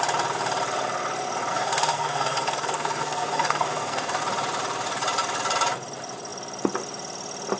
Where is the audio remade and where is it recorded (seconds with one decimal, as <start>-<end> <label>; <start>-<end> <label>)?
0.0-1.5 recorded; 1.5-4.2 remade; 4.2-7.6 recorded